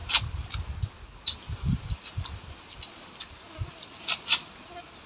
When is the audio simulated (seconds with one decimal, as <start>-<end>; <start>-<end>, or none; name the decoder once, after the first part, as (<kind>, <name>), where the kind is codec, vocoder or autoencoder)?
none